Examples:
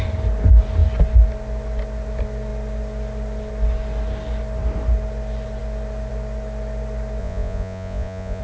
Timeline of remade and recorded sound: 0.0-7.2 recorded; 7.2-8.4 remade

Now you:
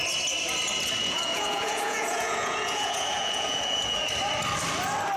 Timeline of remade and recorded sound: 0.0-1.0 recorded; 1.0-4.1 remade; 4.1-5.2 recorded

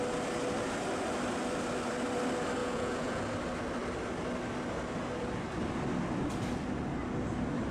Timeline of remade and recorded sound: 0.0-2.6 recorded; 2.6-3.2 remade; 3.2-7.7 recorded